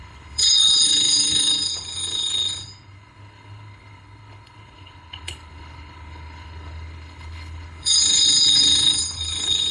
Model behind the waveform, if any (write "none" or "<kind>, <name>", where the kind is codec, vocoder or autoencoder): codec, HILCodec